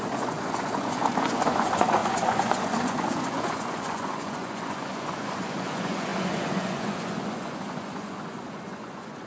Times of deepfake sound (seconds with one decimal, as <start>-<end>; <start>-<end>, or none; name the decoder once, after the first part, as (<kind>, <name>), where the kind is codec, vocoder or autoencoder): 0.0-9.3 (vocoder, Vocos)